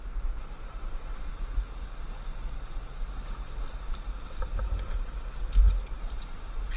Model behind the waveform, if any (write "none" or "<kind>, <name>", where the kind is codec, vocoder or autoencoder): none